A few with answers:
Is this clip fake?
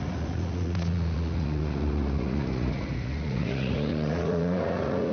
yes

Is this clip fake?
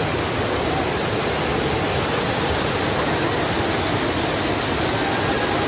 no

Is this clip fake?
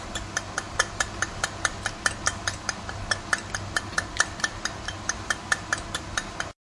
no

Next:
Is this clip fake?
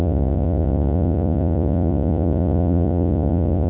yes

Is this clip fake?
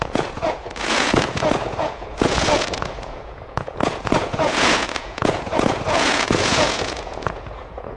yes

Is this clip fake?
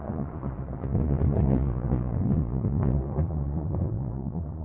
yes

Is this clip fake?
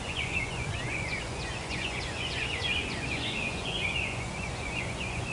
yes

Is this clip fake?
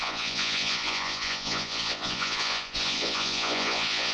yes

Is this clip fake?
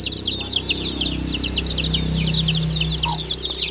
no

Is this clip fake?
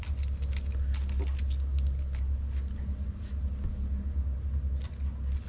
no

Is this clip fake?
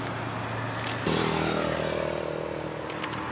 no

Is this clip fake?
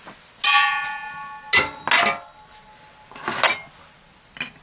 no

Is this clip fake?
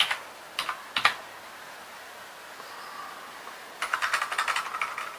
no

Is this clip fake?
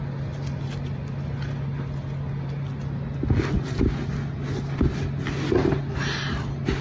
no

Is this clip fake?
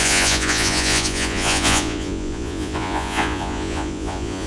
yes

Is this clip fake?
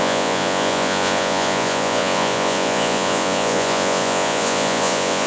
yes